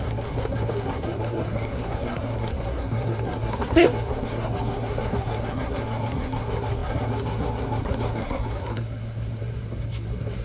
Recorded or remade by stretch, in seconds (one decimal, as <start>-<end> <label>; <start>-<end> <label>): 0.0-10.4 remade